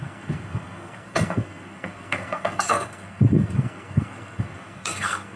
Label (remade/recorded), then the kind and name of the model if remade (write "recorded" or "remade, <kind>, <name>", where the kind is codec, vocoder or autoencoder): remade, codec, SNAC